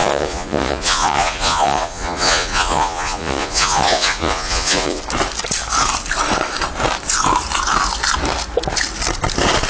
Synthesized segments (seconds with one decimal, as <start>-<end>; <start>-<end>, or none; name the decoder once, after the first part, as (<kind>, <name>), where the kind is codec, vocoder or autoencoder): 0.0-5.0 (vocoder, Vocos)